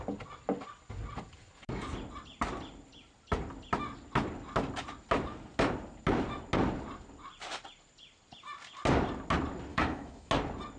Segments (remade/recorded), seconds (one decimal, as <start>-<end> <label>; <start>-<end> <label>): 0.0-9.7 recorded; 9.7-10.3 remade; 10.3-10.8 recorded